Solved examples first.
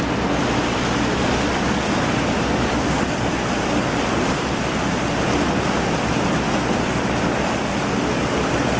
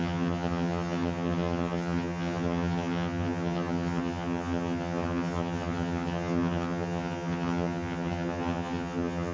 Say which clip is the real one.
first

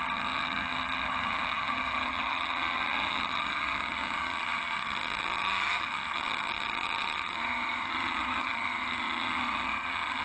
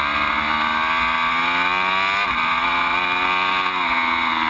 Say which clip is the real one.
second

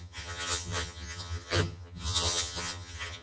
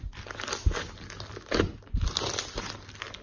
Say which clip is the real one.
second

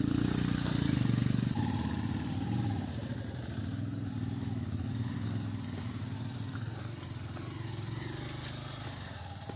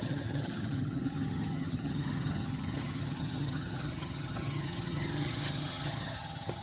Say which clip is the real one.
first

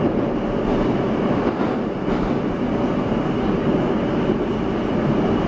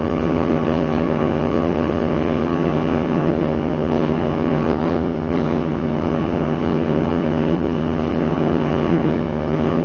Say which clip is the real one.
first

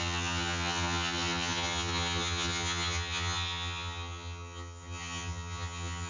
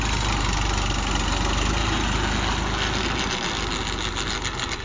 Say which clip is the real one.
second